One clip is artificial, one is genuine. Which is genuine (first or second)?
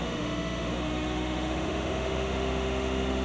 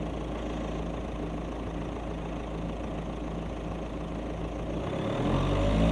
second